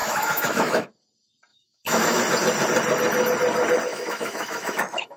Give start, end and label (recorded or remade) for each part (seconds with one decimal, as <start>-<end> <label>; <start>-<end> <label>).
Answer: 0.0-0.9 remade; 0.9-1.5 recorded; 1.5-2.2 remade; 2.2-3.9 recorded; 3.9-5.2 remade